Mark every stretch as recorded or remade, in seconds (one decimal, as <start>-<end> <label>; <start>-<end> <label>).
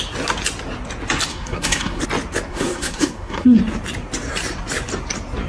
0.0-1.3 recorded; 1.3-2.0 remade; 2.0-2.5 recorded; 2.5-3.6 remade; 3.6-5.5 recorded